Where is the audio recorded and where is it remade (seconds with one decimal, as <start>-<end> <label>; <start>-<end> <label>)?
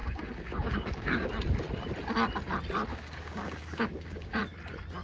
0.0-1.3 remade; 1.3-2.9 recorded; 2.9-4.4 remade; 4.4-5.0 recorded